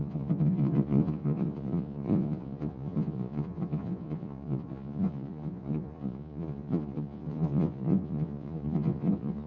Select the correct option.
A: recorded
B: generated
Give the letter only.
B